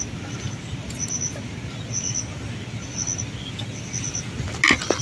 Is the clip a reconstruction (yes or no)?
no